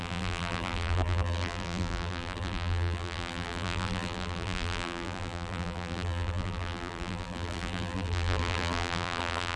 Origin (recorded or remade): remade